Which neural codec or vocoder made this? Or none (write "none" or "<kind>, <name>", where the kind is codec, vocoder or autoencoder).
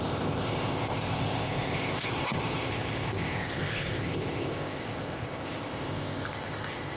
codec, ZipCodec